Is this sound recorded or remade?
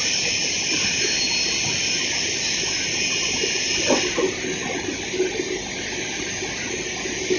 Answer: recorded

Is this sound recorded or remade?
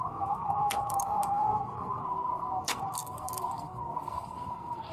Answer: remade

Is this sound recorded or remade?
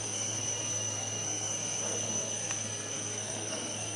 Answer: remade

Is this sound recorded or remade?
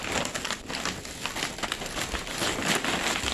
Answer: recorded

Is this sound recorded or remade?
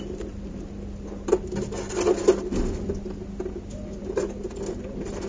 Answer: recorded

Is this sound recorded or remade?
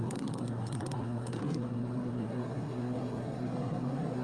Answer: remade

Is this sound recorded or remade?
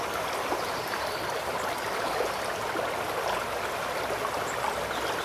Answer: recorded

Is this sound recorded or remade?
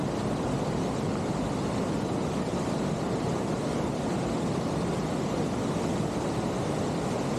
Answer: recorded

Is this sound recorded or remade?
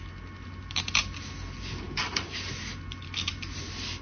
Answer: recorded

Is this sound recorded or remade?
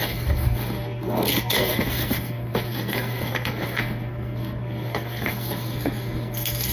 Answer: remade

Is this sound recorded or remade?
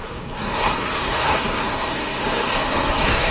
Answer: remade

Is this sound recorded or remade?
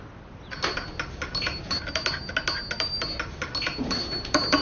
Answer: recorded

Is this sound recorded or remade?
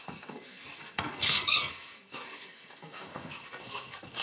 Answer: remade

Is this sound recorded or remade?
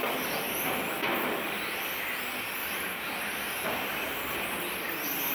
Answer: recorded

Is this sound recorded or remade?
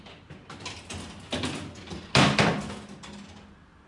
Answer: recorded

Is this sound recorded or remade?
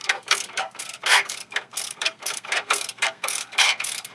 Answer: remade